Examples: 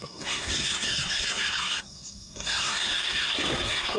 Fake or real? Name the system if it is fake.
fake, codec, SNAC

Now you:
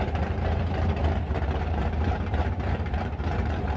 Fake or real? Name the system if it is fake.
fake, vocoder, BigVGAN v2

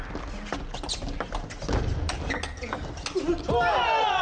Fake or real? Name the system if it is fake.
real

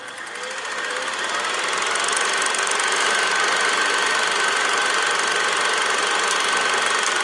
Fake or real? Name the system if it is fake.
real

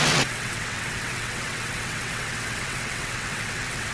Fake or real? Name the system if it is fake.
fake, vocoder, WaveNeXt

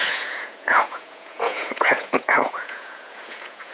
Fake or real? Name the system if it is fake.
fake, vocoder, Vocos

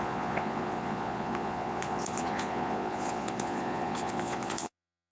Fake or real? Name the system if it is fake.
fake, vocoder, Vocos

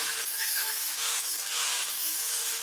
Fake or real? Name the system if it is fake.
fake, codec, DAC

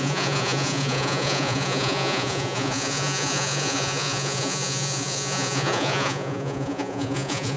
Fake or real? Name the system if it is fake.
fake, vocoder, Vocos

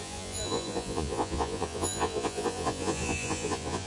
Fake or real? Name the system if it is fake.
fake, vocoder, Vocos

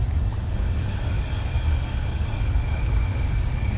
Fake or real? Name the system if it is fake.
fake, codec, DAC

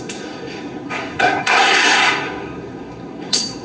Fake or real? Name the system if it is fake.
fake, codec, SNAC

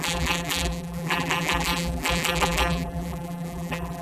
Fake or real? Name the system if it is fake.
fake, vocoder, BigVGAN v2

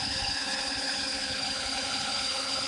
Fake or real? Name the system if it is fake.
fake, codec, HILCodec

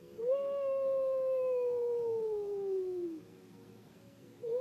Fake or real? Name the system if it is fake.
fake, codec, SNAC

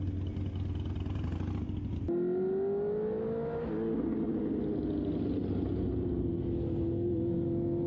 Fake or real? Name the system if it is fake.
real